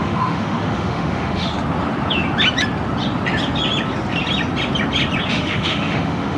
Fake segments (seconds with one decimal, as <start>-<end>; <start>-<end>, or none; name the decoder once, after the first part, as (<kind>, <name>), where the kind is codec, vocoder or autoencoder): 0.0-1.5 (autoencoder, DAC-VAE); 5.3-6.4

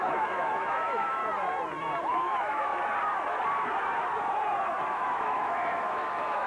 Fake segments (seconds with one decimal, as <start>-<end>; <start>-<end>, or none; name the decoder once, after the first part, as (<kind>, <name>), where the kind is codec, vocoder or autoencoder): 0.0-1.2 (autoencoder, DAC-VAE); 2.0-2.7; 4.9-6.5

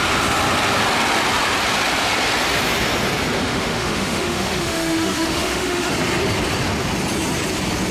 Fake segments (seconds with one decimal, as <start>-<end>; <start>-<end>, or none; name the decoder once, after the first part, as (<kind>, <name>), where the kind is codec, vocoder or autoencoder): 3.4-5.9 (autoencoder, DAC-VAE)

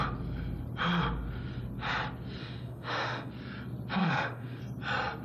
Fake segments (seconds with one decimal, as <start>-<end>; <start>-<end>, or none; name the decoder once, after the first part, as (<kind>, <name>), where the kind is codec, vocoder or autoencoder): 2.4-3.3 (autoencoder, DAC-VAE); 4.0-4.6

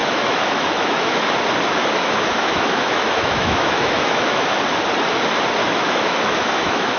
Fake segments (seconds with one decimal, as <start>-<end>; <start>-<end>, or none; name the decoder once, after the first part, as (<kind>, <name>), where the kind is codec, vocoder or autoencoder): 0.0-1.3 (autoencoder, DAC-VAE); 1.8-4.6; 5.6-7.0

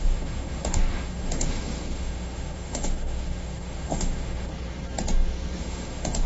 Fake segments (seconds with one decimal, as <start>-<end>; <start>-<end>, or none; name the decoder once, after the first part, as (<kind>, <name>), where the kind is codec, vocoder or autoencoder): 0.0-4.5 (autoencoder, DAC-VAE); 5.6-6.3

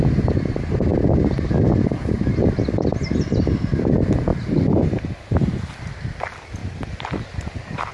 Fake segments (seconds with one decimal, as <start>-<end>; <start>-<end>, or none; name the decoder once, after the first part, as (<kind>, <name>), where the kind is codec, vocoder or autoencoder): none